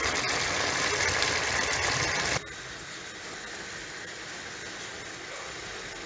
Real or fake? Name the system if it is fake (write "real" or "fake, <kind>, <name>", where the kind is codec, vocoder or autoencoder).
real